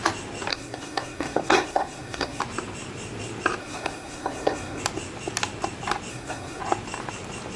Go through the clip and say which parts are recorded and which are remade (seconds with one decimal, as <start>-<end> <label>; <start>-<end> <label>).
0.0-0.5 recorded; 0.5-2.4 remade; 2.4-3.6 recorded; 3.6-4.8 remade; 4.8-6.1 recorded; 6.1-6.6 remade; 6.6-7.6 recorded